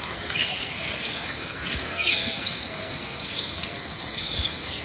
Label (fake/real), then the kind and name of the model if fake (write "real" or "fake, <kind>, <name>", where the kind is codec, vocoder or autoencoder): fake, codec, SNAC